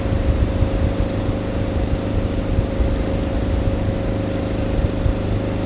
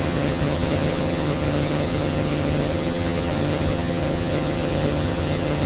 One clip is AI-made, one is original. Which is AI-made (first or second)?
second